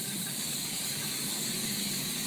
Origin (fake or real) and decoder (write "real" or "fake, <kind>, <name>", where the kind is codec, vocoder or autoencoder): fake, codec, DAC